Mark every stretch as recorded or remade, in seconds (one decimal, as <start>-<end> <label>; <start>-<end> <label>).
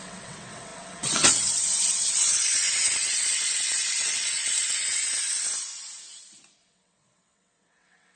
0.0-5.0 remade; 5.0-6.6 recorded; 6.6-8.2 remade